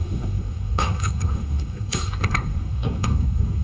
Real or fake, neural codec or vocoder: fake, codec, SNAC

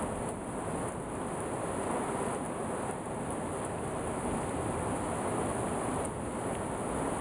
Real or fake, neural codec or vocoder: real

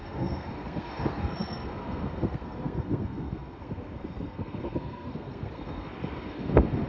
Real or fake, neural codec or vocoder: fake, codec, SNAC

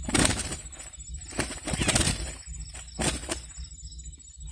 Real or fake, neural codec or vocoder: real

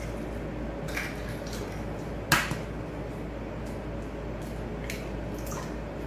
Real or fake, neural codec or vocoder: real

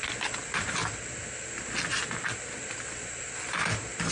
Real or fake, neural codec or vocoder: real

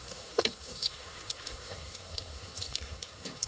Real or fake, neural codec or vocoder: fake, codec, SNAC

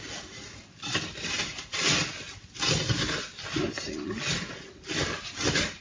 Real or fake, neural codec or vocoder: real